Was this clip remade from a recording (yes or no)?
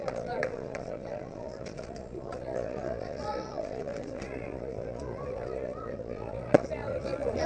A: yes